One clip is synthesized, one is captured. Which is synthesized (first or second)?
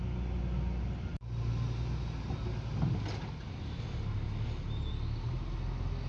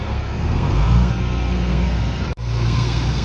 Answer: second